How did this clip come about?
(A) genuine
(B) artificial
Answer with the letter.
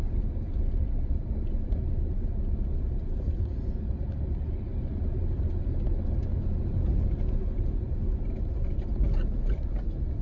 A